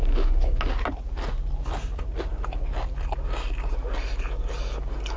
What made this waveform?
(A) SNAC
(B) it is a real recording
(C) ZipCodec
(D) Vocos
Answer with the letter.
B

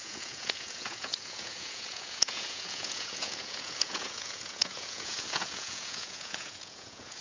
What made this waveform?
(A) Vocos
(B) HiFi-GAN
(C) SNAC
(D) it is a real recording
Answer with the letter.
A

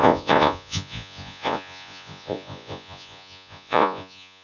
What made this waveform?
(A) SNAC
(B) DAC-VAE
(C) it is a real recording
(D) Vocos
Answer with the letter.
D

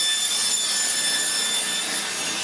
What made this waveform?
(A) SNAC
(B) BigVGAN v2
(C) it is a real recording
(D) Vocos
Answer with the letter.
C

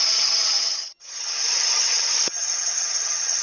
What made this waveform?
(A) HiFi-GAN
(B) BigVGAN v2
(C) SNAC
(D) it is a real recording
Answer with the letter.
A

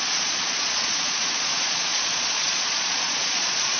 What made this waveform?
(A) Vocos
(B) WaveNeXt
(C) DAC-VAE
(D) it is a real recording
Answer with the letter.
A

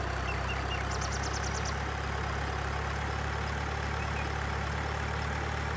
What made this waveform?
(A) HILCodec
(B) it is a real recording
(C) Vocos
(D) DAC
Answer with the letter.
B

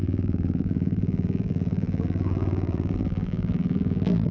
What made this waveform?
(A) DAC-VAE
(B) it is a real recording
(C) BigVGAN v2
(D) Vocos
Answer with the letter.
C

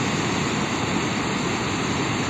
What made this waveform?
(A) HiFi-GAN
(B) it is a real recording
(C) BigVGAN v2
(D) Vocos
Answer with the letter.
B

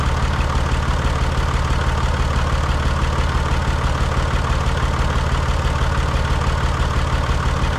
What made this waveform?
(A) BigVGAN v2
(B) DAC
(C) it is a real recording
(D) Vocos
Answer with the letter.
C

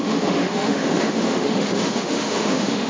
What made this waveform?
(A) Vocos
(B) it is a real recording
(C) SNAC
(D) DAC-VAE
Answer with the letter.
D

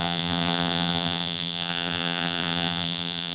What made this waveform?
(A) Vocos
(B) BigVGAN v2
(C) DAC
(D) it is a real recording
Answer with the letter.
B